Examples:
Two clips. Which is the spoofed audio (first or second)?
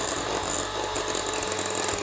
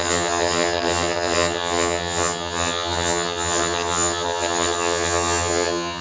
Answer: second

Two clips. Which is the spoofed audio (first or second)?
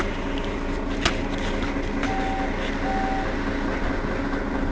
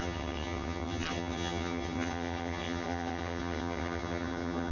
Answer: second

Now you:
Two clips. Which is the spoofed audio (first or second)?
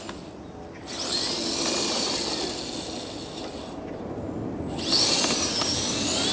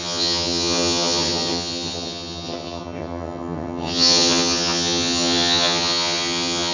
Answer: second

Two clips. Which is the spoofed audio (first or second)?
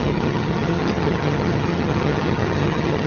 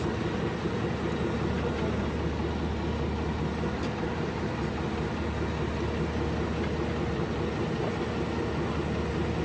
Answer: first